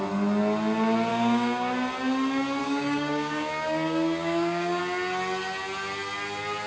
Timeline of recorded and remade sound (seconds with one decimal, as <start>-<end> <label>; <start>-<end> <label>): 0.0-1.1 recorded; 1.1-1.7 remade; 1.7-2.6 recorded; 2.6-4.8 remade; 4.8-6.7 recorded